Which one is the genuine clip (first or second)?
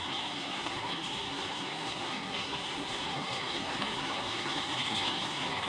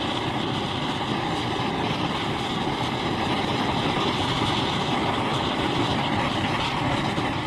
second